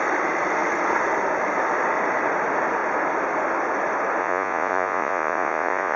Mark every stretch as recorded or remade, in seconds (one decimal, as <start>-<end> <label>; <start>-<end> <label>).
0.0-4.2 recorded; 4.2-6.0 remade